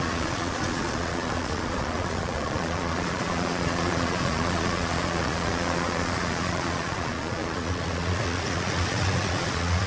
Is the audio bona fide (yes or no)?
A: no